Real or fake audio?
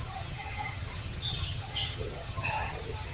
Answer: fake